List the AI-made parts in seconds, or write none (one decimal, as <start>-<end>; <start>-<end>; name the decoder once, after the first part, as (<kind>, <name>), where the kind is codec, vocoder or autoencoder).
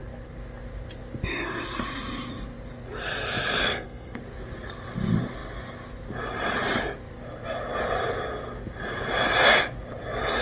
3.6-4.2 (codec, SNAC)